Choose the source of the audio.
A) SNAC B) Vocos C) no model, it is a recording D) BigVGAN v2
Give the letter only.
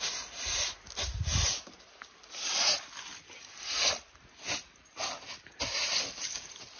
C